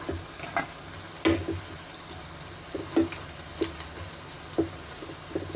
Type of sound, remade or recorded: recorded